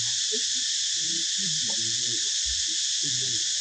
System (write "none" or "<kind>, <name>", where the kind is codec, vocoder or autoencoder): vocoder, BigVGAN v2